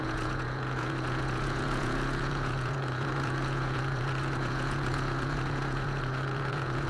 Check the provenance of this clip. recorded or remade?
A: remade